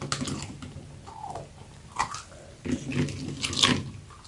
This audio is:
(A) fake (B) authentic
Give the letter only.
B